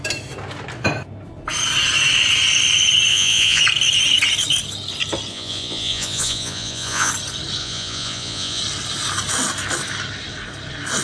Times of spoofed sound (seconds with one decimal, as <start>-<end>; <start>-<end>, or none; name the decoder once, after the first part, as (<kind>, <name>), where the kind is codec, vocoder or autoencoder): 3.1-3.6 (vocoder, Vocos); 5.3-7.1; 7.6-8.6